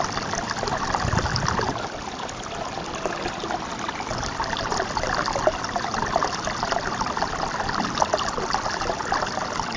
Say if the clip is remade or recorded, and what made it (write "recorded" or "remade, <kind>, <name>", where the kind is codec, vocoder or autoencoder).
recorded